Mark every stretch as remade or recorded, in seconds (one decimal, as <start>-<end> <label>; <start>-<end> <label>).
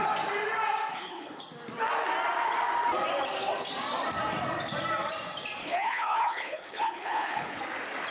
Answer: 0.0-0.9 recorded; 0.9-1.4 remade; 1.4-5.6 recorded; 5.6-7.6 remade; 7.6-8.1 recorded